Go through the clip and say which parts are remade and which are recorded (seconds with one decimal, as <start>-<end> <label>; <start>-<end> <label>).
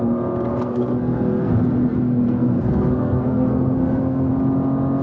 0.0-0.5 recorded; 0.5-1.5 remade; 1.5-1.9 recorded; 1.9-4.3 remade; 4.3-5.0 recorded